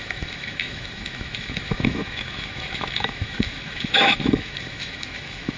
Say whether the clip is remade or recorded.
remade